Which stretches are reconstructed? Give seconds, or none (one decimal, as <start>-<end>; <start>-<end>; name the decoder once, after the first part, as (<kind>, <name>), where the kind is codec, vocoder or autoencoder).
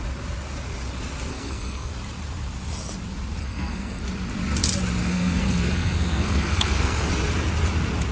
1.3-1.9 (codec, SNAC); 3.4-4.0; 5.0-7.1